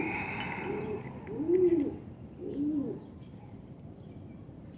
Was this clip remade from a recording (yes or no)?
no